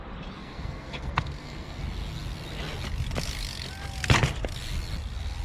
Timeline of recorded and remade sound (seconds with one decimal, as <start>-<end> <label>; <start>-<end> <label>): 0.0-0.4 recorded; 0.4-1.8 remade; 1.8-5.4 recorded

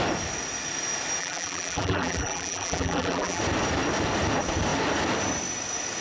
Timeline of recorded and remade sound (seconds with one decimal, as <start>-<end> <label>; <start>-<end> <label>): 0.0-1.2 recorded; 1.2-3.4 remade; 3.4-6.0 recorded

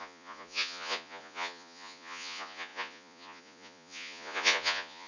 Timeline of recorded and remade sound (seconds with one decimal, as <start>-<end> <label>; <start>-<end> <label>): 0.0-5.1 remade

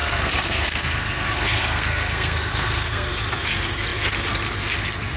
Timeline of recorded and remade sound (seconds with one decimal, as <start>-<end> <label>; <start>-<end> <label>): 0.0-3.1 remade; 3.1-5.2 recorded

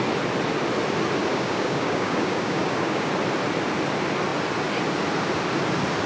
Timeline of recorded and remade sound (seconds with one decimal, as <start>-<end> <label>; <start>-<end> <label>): 0.0-1.3 recorded; 1.3-3.1 remade; 3.1-6.1 recorded